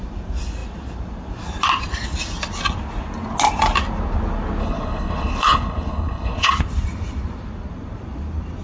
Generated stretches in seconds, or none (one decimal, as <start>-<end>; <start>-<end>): 4.6-6.5